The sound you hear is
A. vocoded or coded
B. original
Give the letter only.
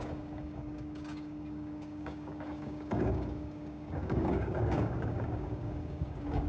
A